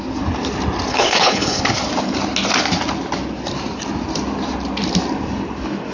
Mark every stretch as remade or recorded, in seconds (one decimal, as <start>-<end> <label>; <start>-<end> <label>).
0.0-0.9 recorded; 0.9-1.6 remade; 1.6-5.9 recorded